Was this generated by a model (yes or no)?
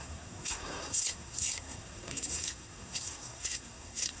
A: yes